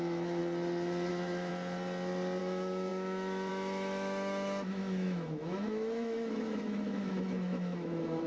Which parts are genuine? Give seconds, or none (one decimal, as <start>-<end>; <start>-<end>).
0.4-1.1; 1.5-2.4